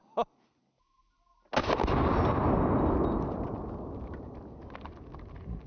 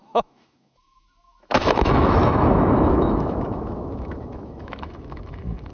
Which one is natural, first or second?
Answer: first